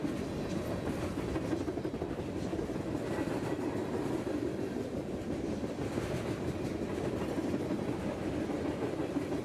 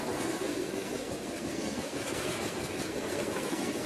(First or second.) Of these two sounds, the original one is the first